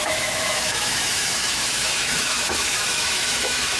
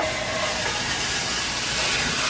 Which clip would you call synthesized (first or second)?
first